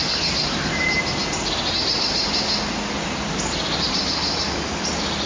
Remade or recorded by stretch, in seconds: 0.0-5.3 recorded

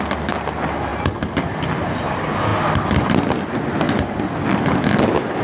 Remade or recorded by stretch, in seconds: 0.0-5.4 recorded

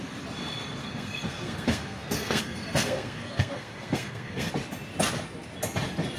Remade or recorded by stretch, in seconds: 0.0-0.8 recorded; 0.8-4.5 remade; 4.5-6.2 recorded